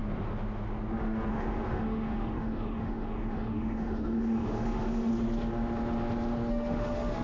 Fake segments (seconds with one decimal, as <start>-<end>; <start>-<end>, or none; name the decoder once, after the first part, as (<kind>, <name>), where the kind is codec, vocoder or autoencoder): 1.3-5.1 (autoencoder, DAC-VAE); 6.5-7.2